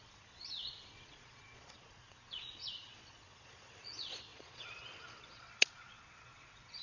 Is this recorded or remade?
remade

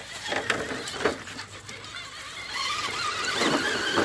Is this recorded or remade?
recorded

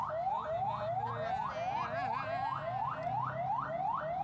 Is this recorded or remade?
recorded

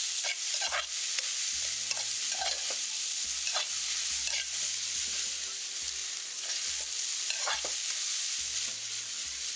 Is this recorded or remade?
remade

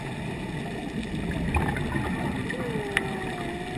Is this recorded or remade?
recorded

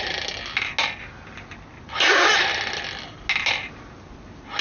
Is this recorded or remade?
recorded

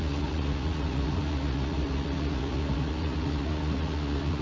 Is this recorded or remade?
remade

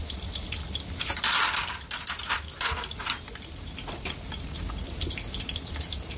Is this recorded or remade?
recorded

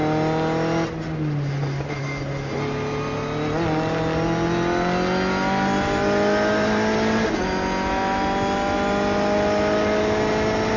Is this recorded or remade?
recorded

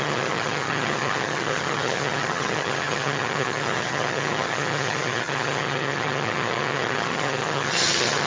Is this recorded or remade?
remade